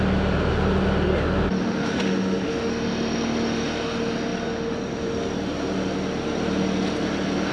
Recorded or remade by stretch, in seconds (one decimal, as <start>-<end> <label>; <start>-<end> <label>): 0.0-1.6 recorded; 1.6-2.7 remade; 2.7-7.5 recorded